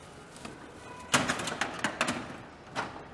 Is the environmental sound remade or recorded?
recorded